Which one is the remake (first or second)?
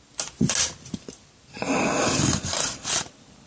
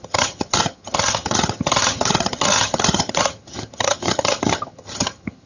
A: second